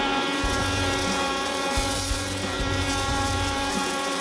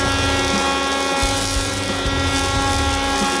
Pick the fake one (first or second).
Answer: first